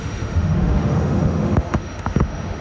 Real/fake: fake